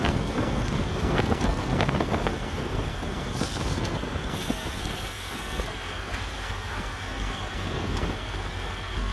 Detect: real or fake fake